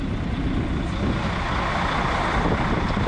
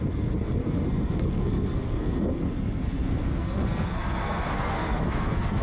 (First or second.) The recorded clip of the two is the first